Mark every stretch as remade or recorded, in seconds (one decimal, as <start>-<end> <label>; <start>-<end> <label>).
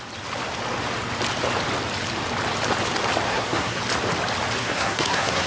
0.0-3.3 recorded; 3.3-3.8 remade; 3.8-4.6 recorded; 4.6-5.5 remade